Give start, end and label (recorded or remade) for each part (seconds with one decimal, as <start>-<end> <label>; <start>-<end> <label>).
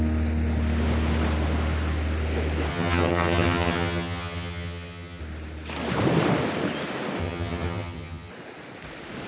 0.0-2.7 recorded; 2.7-5.2 remade; 5.2-7.2 recorded; 7.2-8.3 remade; 8.3-9.3 recorded